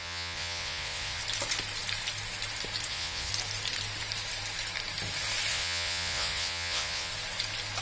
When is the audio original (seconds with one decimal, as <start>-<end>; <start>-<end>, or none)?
1.2-2.9; 3.3-5.5; 7.1-7.8